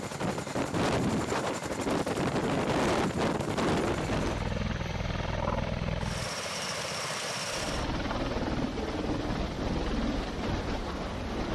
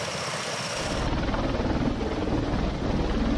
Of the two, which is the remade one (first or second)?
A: first